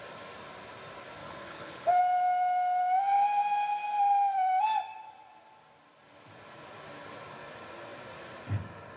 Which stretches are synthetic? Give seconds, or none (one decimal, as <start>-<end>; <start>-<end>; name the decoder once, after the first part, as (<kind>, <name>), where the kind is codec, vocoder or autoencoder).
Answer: 1.2-2.0 (codec, HILCodec)